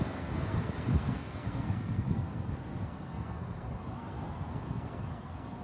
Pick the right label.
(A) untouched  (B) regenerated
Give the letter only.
B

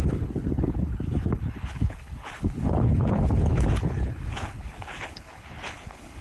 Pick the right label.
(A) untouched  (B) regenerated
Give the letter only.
B